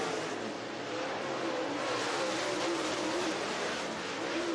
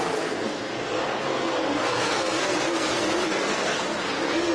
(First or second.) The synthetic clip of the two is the second